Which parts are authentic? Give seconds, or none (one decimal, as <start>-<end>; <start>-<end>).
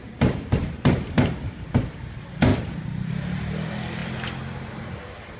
0.0-0.6; 1.8-2.5; 3.1-5.4